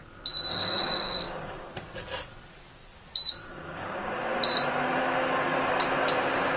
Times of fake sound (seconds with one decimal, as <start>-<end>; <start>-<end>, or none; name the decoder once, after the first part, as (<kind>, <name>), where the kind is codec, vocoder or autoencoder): 0.5-1.7 (codec, DAC); 3.5-4.1

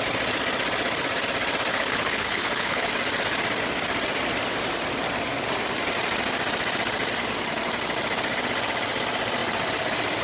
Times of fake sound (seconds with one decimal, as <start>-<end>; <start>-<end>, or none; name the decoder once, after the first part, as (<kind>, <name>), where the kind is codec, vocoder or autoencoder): 1.7-2.9 (codec, HILCodec)

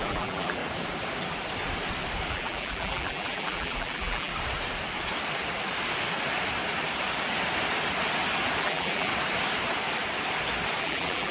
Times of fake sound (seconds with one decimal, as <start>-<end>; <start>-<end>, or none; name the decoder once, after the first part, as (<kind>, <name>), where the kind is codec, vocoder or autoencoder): 0.0-0.6 (vocoder, BigVGAN v2); 2.3-4.3; 8.6-9.1; 10.8-11.3

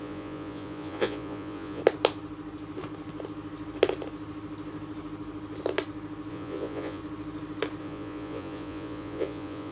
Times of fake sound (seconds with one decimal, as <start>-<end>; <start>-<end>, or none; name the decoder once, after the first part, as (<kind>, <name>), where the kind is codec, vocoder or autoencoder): 0.0-1.8 (vocoder, Vocos); 6.3-7.0; 7.8-9.7

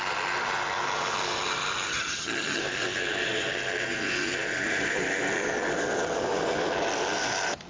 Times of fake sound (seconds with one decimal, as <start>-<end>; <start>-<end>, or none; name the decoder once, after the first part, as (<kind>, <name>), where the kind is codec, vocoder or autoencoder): 1.9-2.6 (vocoder, HiFi-GAN)